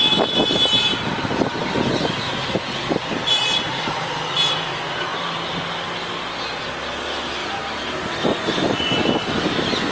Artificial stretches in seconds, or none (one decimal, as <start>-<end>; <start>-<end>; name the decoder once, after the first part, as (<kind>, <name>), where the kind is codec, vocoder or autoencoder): 0.9-2.9 (vocoder, BigVGAN v2); 5.1-5.6; 7.4-8.0